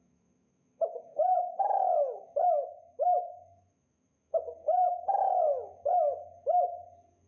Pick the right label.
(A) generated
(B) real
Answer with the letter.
A